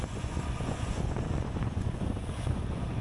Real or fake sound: fake